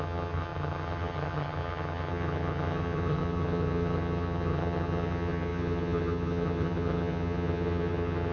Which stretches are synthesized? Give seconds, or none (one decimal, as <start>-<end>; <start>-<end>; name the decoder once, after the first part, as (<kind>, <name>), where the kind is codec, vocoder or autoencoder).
0.0-8.3 (vocoder, HiFi-GAN)